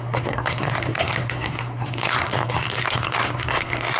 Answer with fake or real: fake